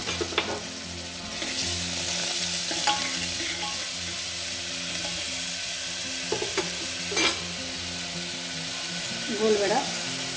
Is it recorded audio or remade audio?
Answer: recorded